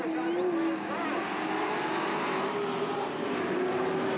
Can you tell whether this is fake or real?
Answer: real